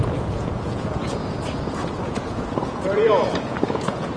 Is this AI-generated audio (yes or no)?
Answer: yes